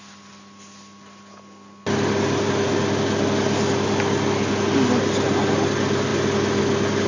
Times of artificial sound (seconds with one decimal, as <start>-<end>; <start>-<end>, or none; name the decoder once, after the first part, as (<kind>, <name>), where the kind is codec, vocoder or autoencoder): none